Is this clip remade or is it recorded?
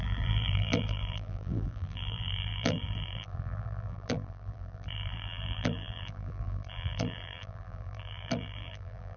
remade